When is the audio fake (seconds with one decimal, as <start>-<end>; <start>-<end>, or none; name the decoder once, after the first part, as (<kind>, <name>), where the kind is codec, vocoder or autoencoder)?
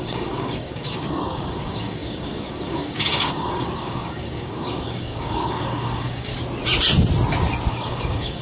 0.0-6.3 (codec, DAC); 7.7-8.4